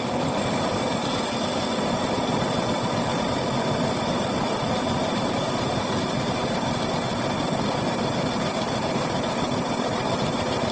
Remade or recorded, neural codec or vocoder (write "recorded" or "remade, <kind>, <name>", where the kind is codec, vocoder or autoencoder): recorded